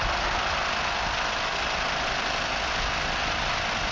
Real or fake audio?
real